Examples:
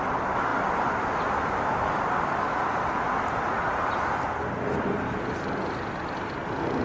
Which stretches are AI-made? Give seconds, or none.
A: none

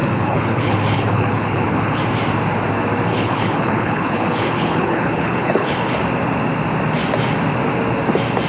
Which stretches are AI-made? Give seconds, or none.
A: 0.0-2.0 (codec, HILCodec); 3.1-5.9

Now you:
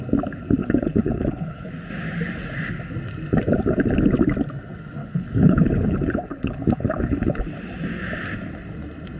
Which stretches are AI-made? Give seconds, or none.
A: 0.6-1.7 (codec, HILCodec); 5.0-7.4